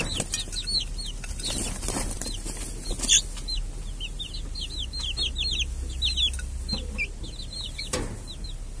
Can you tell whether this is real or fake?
real